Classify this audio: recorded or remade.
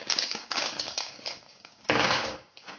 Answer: remade